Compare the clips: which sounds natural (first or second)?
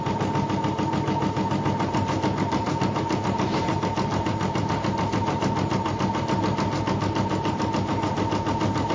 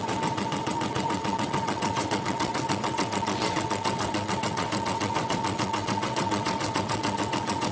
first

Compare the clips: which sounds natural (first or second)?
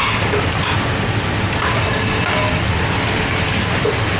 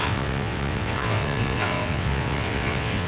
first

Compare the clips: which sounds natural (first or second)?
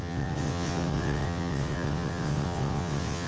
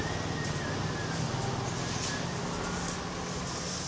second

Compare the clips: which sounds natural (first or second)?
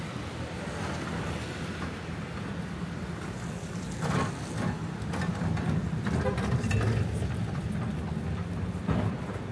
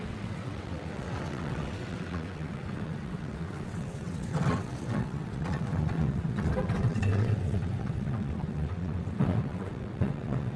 first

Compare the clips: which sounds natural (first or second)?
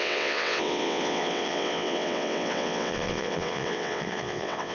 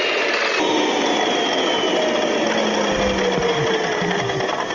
second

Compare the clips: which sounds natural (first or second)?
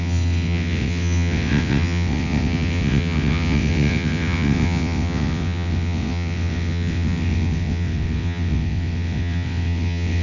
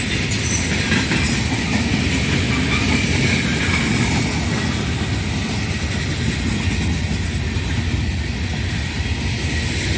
second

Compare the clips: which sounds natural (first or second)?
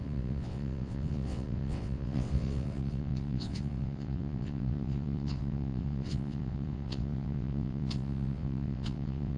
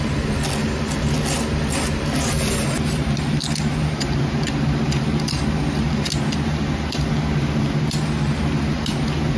second